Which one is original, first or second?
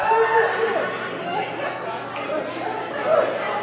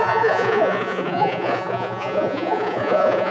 first